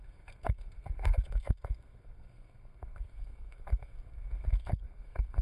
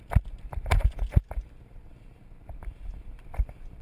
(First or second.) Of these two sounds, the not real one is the first